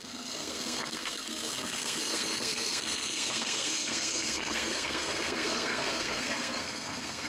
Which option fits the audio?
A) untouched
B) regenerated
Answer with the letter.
B